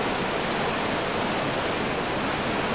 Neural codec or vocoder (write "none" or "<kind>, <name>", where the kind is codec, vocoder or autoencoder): none